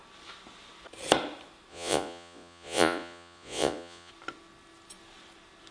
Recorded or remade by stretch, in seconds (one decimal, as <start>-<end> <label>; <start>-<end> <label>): 0.0-1.7 recorded; 1.7-4.1 remade; 4.1-5.7 recorded